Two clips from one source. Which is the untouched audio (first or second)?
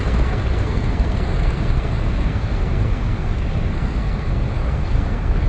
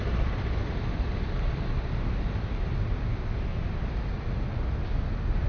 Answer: second